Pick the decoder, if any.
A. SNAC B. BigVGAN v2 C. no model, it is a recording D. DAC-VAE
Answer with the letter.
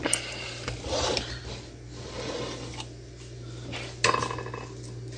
C